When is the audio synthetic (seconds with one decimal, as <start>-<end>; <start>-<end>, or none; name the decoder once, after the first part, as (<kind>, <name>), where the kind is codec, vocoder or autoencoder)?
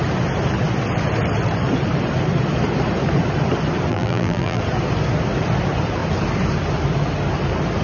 3.9-4.6 (vocoder, BigVGAN v2)